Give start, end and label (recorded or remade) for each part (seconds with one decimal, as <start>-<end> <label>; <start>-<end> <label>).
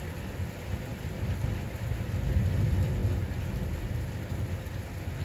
0.0-5.2 recorded